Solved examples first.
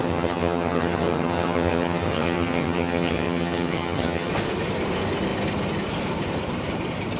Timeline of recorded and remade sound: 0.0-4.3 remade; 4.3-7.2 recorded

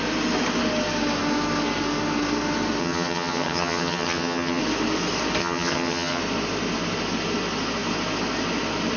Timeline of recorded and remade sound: 0.0-2.8 recorded; 2.8-4.6 remade; 4.6-5.4 recorded; 5.4-6.2 remade; 6.2-9.0 recorded